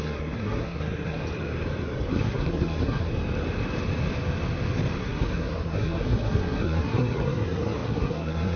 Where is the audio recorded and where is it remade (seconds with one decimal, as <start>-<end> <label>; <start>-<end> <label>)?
0.0-1.2 remade; 1.2-2.1 recorded; 2.1-3.1 remade; 3.1-5.0 recorded; 5.0-8.6 remade